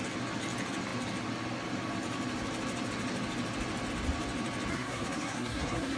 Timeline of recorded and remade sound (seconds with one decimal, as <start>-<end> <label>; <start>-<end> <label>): 0.0-4.7 recorded; 4.7-6.0 remade